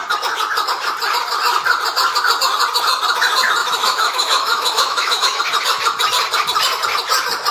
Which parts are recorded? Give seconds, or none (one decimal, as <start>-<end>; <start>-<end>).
0.0-3.6; 5.4-7.5